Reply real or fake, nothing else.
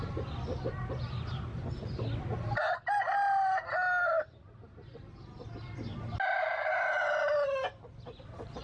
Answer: real